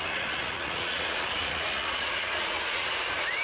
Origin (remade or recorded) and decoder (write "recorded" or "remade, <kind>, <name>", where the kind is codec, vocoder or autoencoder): remade, vocoder, Vocos